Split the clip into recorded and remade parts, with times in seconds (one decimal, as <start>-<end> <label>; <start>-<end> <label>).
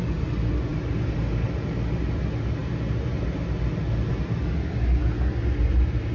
0.0-6.1 recorded